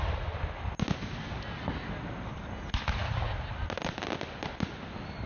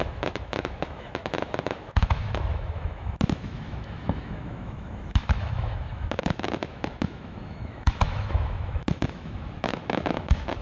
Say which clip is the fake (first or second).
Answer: second